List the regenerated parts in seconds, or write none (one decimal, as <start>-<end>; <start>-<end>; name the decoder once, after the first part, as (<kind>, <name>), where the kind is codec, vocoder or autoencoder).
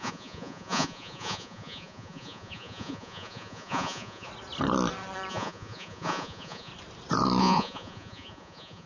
0.0-4.3 (vocoder, Vocos); 5.3-6.7; 7.4-8.9